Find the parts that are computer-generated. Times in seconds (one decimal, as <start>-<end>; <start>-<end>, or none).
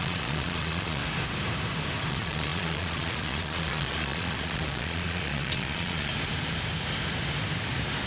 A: 0.0-1.0; 2.1-6.1